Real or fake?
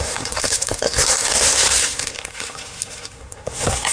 fake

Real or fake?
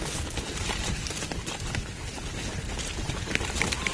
real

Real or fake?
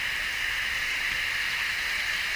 real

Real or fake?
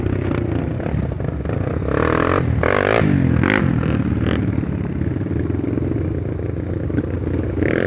real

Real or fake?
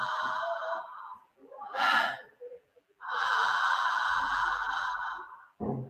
fake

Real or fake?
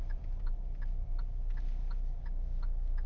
real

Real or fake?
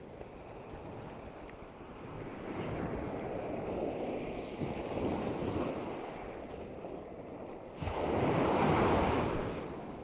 real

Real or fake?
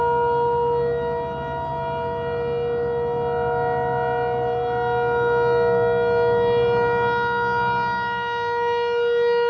real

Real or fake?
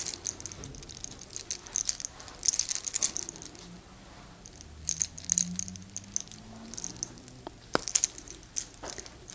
real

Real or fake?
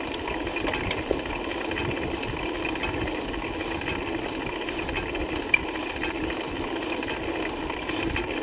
real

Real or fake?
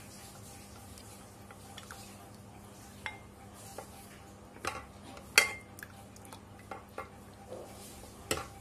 real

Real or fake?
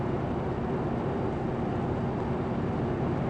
real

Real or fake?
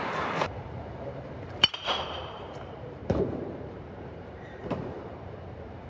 fake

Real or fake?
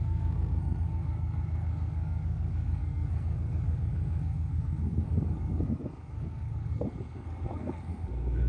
fake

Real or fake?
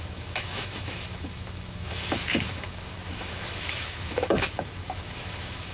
fake